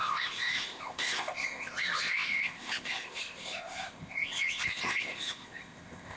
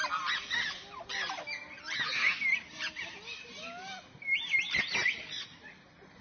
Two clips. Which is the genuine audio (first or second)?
second